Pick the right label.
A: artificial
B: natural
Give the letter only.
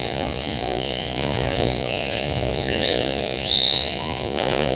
A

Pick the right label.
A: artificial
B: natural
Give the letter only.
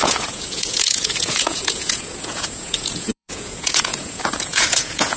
A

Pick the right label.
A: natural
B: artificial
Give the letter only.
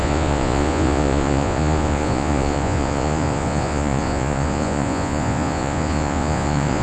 B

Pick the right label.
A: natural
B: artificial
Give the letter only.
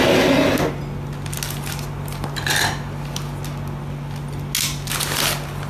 A